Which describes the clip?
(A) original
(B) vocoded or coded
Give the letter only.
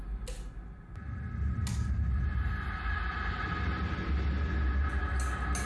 A